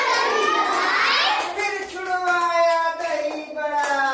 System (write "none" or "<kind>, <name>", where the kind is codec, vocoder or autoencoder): none